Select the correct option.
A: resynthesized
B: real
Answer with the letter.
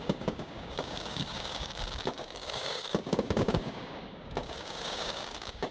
A